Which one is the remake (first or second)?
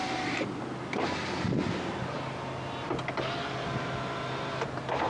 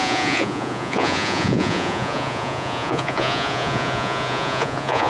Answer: second